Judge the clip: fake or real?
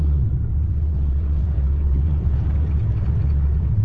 fake